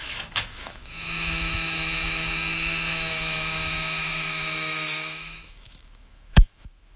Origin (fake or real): fake